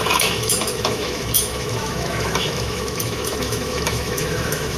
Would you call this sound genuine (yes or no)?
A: no